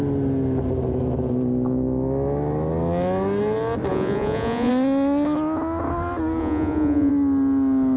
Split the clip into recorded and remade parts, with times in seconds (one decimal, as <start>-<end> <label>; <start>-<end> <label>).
0.0-3.9 recorded; 3.9-4.7 remade; 4.7-6.4 recorded; 6.4-7.1 remade; 7.1-8.0 recorded